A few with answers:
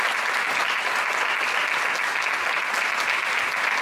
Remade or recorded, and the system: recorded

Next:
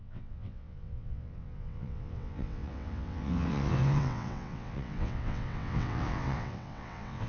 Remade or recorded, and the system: remade, vocoder, WaveNeXt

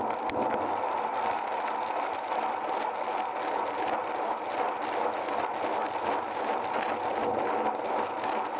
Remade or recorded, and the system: recorded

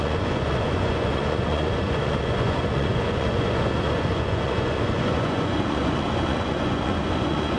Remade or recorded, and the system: remade, vocoder, Vocos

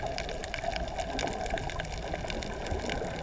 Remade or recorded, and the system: recorded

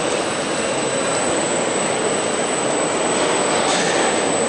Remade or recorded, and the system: recorded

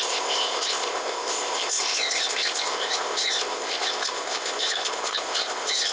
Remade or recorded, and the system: remade, codec, ZipCodec